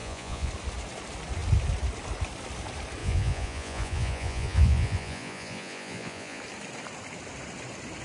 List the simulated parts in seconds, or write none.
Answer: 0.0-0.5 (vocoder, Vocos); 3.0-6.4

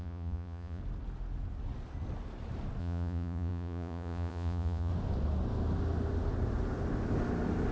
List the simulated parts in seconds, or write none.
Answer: 0.0-0.8 (vocoder, Vocos); 2.8-4.9